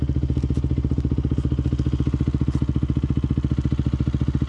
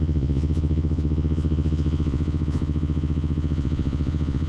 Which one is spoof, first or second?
second